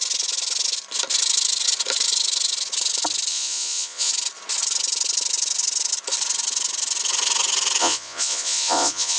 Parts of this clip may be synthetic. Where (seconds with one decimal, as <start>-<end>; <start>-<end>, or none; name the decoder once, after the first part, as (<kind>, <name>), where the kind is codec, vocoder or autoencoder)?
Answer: 3.3-4.1 (vocoder, Vocos); 7.8-9.2